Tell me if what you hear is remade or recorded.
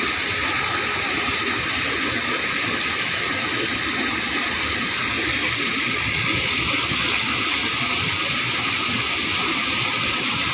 recorded